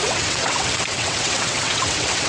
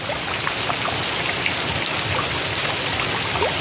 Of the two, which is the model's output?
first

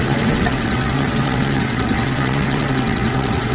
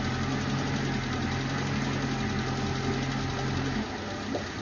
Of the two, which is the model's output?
first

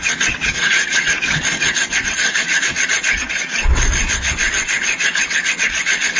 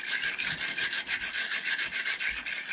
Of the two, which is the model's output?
first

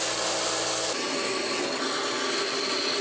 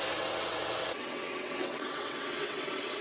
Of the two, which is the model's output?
second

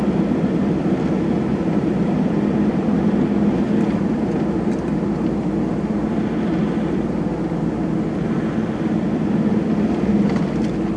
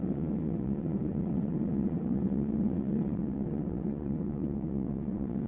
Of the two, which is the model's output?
second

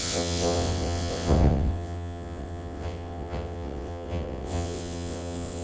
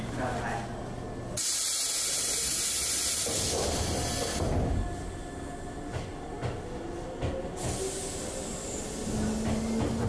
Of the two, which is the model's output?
first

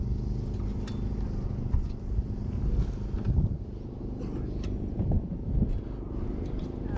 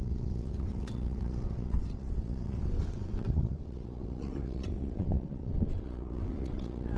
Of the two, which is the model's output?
second